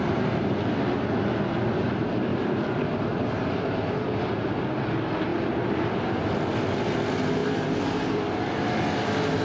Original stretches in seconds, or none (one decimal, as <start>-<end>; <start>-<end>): 0.0-2.3; 3.7-5.3; 6.7-7.4; 8.2-9.4

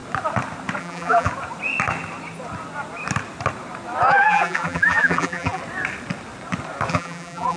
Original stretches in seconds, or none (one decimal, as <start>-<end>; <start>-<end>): 0.0-0.8; 1.3-4.1; 5.6-6.9

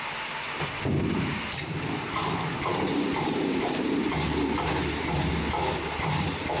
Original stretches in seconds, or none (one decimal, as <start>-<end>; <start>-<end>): 0.0-1.3; 5.3-6.6

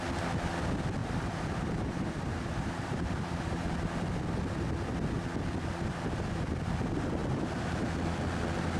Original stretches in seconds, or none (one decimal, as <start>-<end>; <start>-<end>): 0.0-1.0; 3.7-7.2; 7.9-8.8

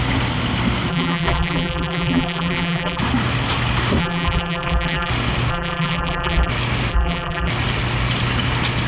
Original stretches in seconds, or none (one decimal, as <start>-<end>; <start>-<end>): 0.0-0.9; 3.0-4.0; 5.1-5.5; 6.5-6.9; 7.5-8.9

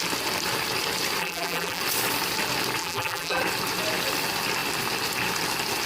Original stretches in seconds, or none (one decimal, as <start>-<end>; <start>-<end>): 0.0-1.2; 1.8-2.8; 3.4-5.9

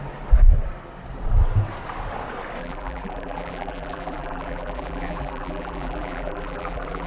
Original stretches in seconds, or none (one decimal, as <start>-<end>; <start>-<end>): 0.0-2.6

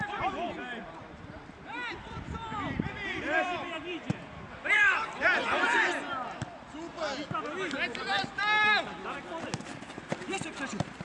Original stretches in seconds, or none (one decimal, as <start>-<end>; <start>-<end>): 6.2-10.0